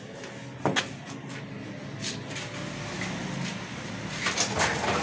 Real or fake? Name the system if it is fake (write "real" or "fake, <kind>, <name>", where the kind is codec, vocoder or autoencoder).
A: real